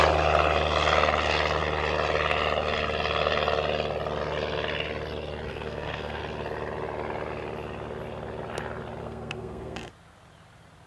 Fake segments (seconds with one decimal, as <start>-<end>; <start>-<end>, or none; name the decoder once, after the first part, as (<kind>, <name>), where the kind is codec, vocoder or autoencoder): 5.5-6.2 (codec, SNAC); 9.0-9.9